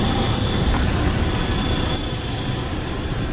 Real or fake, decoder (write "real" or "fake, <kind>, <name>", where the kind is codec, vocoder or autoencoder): fake, vocoder, BigVGAN v2